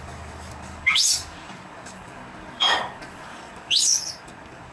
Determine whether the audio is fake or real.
fake